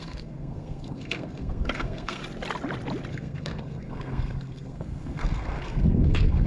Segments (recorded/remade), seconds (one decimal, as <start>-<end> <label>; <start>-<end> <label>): 0.0-2.2 remade; 2.2-3.1 recorded; 3.1-6.5 remade